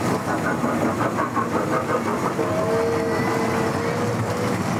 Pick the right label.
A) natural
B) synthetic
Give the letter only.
A